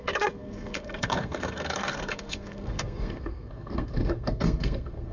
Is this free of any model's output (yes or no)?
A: no